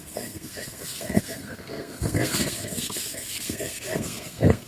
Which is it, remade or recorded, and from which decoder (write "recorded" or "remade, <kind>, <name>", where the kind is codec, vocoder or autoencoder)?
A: remade, codec, SNAC